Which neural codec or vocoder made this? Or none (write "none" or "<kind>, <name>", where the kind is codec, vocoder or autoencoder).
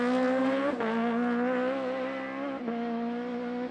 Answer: none